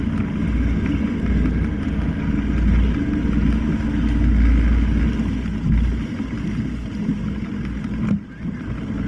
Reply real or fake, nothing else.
real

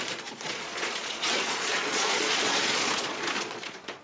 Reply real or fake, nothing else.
fake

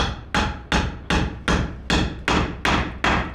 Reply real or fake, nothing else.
real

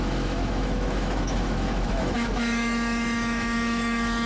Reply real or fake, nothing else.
fake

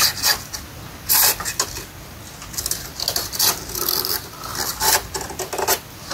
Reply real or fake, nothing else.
real